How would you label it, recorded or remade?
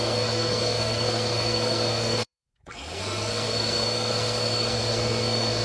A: remade